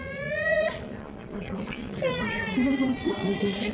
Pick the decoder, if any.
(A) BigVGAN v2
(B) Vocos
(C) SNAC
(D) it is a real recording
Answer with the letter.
B